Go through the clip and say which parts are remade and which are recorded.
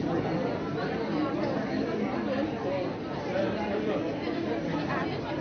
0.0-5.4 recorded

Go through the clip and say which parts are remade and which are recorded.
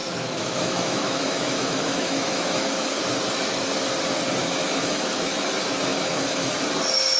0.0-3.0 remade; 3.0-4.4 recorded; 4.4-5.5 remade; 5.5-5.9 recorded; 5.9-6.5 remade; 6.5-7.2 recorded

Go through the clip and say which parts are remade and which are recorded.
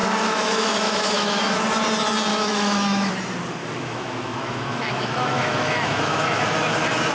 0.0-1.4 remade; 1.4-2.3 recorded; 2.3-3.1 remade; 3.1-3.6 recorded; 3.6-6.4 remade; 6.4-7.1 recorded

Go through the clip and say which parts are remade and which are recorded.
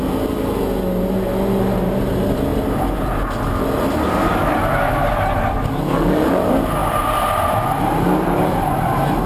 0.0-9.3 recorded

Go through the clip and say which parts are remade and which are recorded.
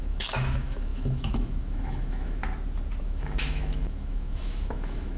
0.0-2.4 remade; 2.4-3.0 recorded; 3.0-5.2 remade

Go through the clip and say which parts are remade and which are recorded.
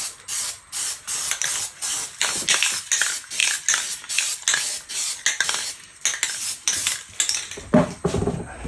0.0-8.7 recorded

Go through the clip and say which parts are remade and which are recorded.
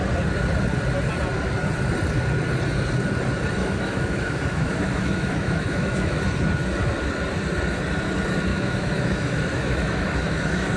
0.0-3.6 recorded; 3.6-6.2 remade; 6.2-8.5 recorded; 8.5-10.8 remade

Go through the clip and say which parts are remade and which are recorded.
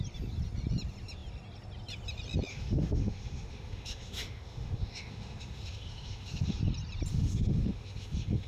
0.0-2.5 recorded; 2.5-6.6 remade; 6.6-7.1 recorded; 7.1-8.5 remade